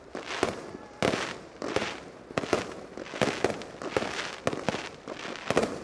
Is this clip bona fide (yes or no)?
yes